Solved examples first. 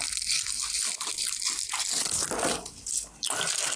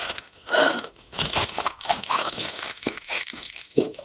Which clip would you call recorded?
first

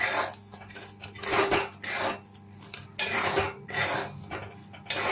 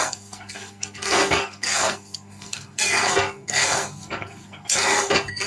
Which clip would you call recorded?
first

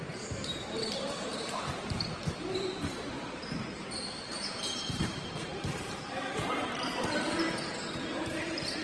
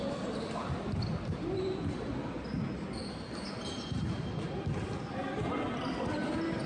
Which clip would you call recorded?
second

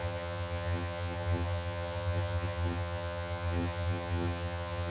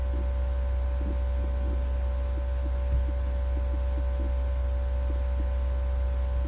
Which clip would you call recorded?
second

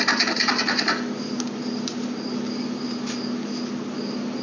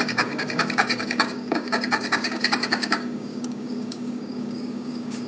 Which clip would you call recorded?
first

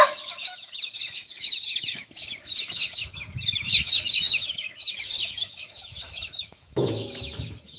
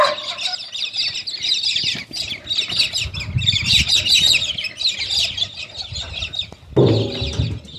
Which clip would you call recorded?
second